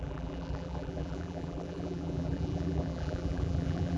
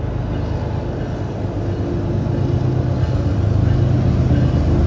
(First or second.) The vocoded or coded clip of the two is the first